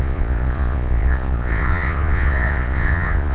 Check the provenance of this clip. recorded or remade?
remade